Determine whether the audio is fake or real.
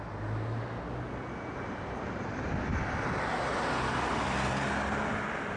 real